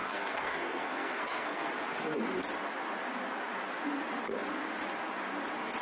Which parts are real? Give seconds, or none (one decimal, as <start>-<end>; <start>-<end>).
1.7-5.8